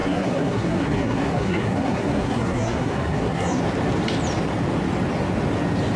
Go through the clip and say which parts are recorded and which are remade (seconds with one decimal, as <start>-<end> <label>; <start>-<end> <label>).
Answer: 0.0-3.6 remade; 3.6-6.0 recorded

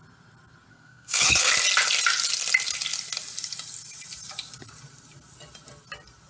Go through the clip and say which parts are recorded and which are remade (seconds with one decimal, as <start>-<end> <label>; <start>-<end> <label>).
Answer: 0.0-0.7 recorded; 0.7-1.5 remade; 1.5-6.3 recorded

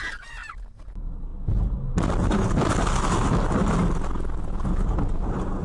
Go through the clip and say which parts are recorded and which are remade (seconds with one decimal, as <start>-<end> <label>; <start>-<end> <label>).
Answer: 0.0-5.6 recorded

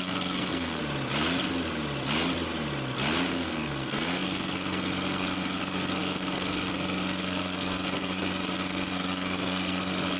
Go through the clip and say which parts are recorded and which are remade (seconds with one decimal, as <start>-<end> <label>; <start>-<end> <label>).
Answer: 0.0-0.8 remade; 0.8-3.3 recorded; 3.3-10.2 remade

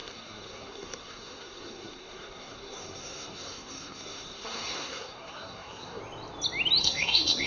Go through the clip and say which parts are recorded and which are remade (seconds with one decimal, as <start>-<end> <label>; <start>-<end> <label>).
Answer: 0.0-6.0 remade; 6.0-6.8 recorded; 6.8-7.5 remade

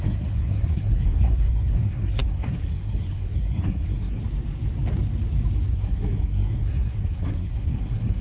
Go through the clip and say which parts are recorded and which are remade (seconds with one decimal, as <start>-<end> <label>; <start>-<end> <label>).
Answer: 0.0-4.2 remade; 4.2-5.7 recorded; 5.7-8.2 remade